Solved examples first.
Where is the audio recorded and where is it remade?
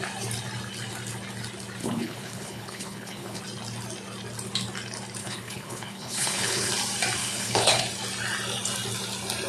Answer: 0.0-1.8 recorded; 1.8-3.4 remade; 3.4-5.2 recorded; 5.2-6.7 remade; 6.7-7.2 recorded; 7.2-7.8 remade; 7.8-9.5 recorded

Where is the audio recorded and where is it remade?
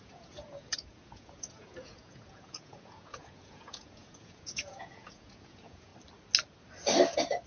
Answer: 0.0-5.9 remade; 5.9-7.5 recorded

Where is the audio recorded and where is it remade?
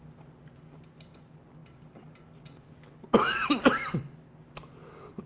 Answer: 0.0-5.3 recorded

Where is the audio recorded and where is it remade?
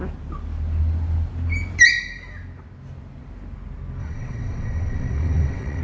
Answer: 0.0-4.0 recorded; 4.0-5.8 remade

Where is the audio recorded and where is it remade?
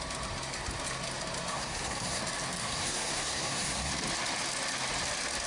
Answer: 0.0-1.5 recorded; 1.5-2.2 remade; 2.2-2.6 recorded; 2.6-3.9 remade; 3.9-5.5 recorded